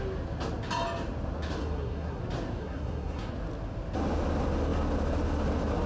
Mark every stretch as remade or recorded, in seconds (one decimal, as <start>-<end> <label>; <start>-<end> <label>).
0.0-1.6 recorded; 1.6-2.2 remade; 2.2-2.6 recorded; 2.6-3.3 remade; 3.3-5.9 recorded